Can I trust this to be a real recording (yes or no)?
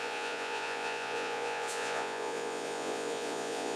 no